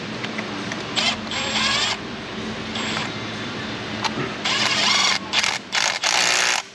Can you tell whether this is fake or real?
real